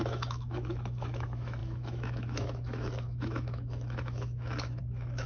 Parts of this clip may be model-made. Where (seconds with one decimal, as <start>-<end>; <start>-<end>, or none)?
0.0-5.3